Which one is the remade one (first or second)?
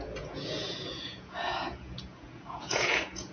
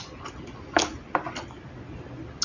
first